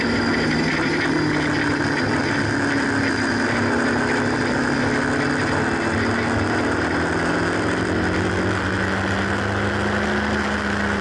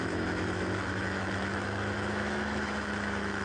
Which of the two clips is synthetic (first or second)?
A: second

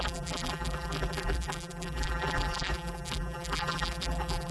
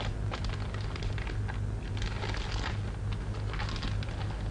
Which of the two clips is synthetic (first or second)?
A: first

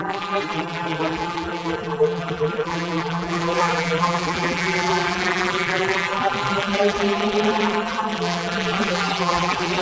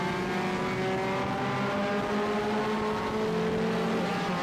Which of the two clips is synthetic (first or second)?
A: first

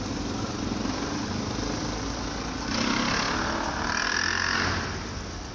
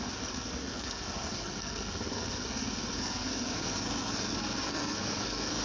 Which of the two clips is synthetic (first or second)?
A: second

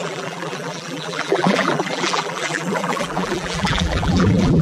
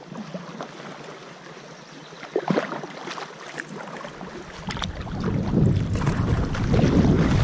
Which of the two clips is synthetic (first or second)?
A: first